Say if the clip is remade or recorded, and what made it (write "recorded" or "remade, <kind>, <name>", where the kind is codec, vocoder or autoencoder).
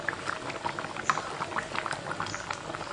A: recorded